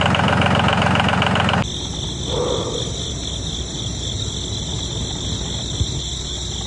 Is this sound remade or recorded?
recorded